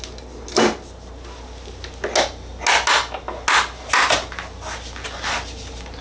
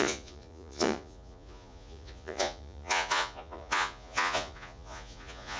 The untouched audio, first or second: first